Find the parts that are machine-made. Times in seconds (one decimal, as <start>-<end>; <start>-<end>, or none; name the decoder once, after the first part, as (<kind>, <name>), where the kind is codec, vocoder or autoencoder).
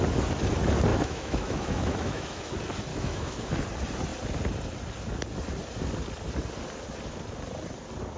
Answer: 0.9-2.5 (autoencoder, DAC-VAE); 2.9-3.5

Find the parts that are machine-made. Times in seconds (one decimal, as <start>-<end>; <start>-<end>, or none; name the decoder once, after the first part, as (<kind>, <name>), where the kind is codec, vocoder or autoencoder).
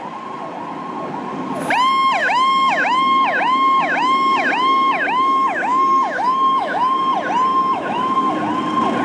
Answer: 2.2-7.0 (autoencoder, DAC-VAE); 7.5-8.3